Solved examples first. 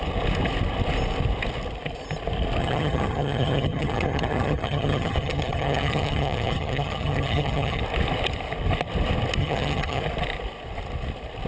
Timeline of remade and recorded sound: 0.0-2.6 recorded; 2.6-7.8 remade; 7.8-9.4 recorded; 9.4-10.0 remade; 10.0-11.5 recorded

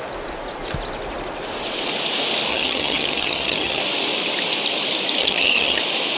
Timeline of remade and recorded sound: 0.0-2.5 recorded; 2.5-3.8 remade; 3.8-5.2 recorded; 5.2-5.8 remade; 5.8-6.2 recorded

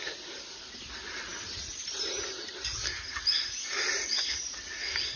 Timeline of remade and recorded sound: 0.0-5.2 recorded

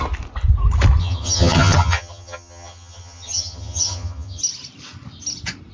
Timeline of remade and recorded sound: 0.0-1.0 recorded; 1.0-4.4 remade; 4.4-5.7 recorded

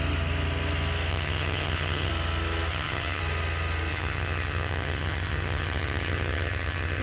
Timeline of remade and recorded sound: 0.0-1.1 recorded; 1.1-2.1 remade; 2.1-2.7 recorded; 2.7-3.2 remade; 3.2-3.9 recorded; 3.9-7.0 remade

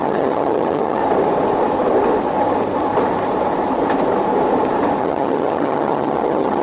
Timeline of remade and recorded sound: 0.0-1.0 remade; 1.0-5.0 recorded; 5.0-6.6 remade